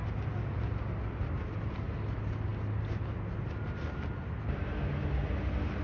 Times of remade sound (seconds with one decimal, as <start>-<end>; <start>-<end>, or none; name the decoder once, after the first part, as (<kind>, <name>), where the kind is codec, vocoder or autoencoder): none